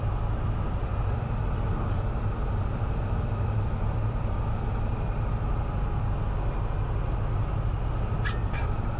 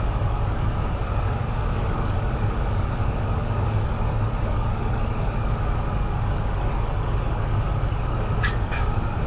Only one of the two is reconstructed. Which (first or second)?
second